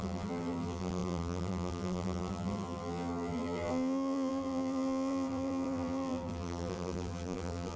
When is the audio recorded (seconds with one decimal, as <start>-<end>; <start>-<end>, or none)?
none